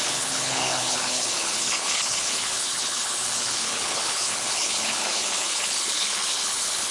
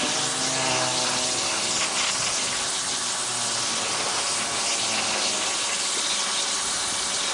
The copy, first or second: first